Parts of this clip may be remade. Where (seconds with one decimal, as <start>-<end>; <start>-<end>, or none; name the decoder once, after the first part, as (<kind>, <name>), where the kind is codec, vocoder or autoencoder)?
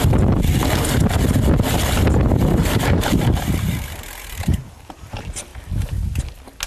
2.6-4.6 (vocoder, BigVGAN v2)